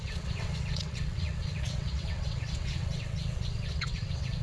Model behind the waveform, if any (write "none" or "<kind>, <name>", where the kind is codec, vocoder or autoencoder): vocoder, WaveNeXt